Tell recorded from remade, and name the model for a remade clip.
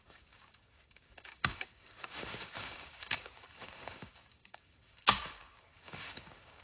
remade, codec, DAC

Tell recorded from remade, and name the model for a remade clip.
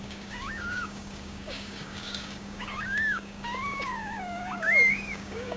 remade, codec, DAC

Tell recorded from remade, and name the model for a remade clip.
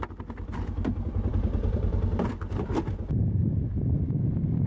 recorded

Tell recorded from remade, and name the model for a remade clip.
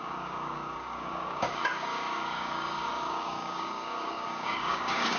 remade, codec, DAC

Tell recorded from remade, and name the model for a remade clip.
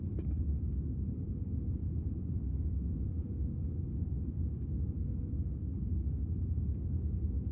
remade, codec, DAC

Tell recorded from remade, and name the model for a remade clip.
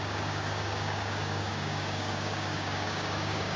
remade, codec, DAC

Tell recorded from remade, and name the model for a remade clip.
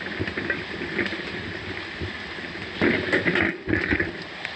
recorded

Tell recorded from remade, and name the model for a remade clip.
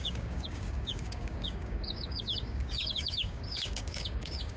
remade, codec, DAC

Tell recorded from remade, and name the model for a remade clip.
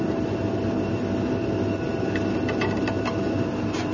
recorded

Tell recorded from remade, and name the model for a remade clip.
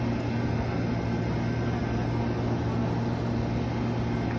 recorded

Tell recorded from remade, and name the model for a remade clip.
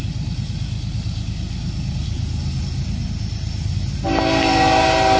recorded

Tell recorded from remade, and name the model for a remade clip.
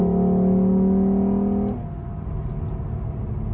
recorded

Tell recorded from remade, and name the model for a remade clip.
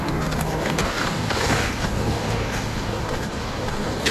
remade, codec, DAC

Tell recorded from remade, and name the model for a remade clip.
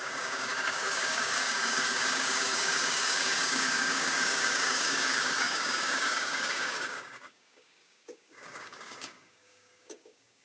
remade, codec, DAC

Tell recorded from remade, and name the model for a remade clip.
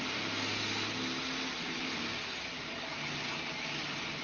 recorded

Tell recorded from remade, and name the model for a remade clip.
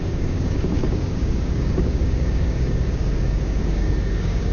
remade, codec, DAC